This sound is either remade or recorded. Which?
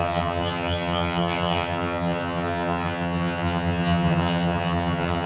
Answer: remade